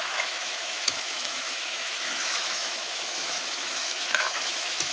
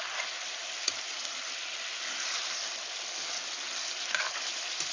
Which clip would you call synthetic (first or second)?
first